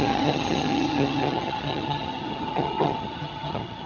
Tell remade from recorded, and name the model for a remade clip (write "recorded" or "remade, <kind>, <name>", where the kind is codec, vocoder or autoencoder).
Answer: remade, vocoder, HiFi-GAN